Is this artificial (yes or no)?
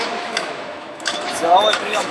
yes